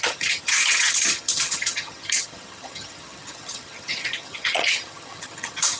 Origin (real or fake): fake